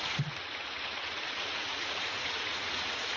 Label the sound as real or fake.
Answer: fake